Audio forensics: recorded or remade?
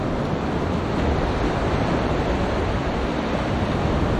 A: recorded